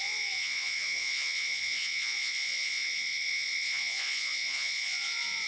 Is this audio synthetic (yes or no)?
yes